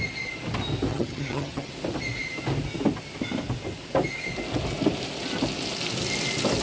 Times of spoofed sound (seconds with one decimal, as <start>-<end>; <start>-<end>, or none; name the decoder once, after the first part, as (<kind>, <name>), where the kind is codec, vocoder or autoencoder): 0.9-1.7 (vocoder, HiFi-GAN)